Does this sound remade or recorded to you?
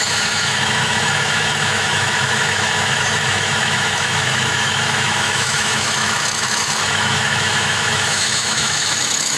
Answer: remade